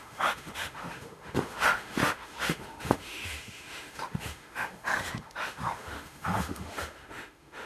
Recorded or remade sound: remade